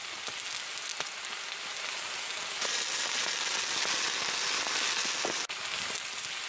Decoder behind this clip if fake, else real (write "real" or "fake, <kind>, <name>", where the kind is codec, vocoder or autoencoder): real